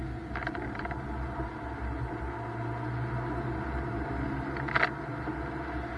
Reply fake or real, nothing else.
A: real